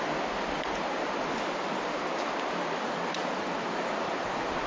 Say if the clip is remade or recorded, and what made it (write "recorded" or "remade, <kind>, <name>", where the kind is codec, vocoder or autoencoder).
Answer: recorded